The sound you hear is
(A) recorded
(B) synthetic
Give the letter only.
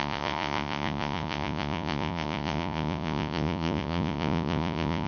B